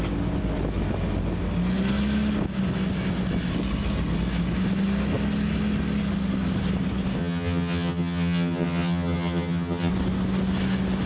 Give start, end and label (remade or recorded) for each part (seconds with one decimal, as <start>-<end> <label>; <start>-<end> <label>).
0.0-7.2 recorded; 7.2-9.9 remade; 9.9-11.1 recorded